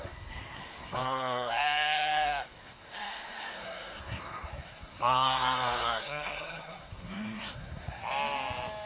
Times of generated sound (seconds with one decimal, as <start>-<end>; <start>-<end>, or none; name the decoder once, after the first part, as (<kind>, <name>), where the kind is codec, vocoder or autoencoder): 0.0-8.0 (codec, SNAC)